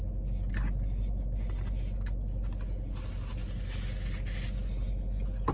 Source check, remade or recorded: recorded